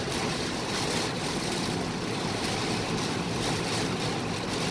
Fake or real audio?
real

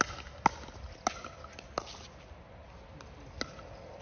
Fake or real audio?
real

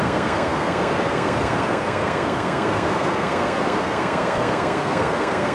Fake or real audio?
fake